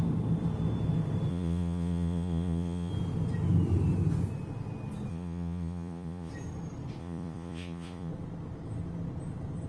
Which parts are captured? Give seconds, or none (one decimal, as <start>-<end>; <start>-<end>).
0.0-1.3; 2.9-5.1; 6.3-7.0; 8.1-9.7